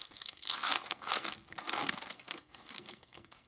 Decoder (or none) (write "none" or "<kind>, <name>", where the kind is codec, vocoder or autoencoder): codec, SNAC